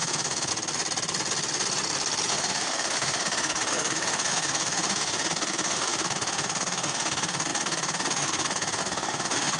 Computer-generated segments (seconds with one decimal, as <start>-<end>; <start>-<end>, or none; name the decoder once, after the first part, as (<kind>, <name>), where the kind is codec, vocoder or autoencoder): 0.0-0.5 (autoencoder, DAC-VAE); 2.3-9.6

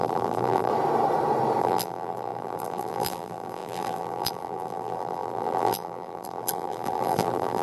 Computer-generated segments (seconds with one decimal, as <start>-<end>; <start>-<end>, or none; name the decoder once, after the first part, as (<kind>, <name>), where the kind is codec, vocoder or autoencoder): 0.0-0.7 (vocoder, BigVGAN v2); 1.6-7.6

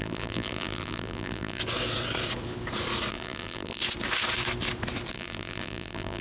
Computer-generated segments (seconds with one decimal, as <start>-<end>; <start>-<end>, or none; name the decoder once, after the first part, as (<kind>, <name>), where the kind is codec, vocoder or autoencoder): 0.0-1.6 (vocoder, BigVGAN v2); 3.1-3.8; 5.1-6.2

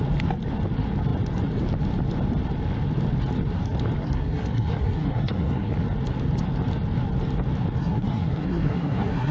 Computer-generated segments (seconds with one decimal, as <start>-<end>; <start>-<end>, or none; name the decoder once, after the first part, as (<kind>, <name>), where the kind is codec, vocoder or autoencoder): 4.0-5.7 (codec, SNAC); 7.8-9.3